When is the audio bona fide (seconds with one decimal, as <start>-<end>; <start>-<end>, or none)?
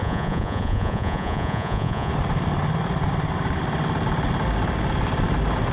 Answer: 2.1-5.7